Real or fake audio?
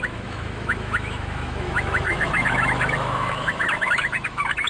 fake